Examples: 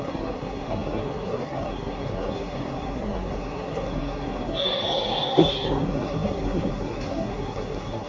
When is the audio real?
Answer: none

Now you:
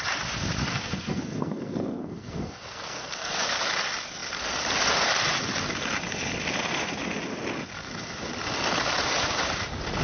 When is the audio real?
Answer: 0.0-0.7; 3.6-10.0